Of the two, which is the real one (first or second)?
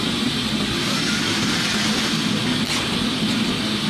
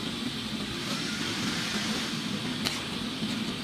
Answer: first